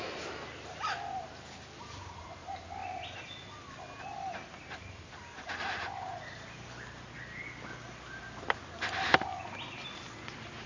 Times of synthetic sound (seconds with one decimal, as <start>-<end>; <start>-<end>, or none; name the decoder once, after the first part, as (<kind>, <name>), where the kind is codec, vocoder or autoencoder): none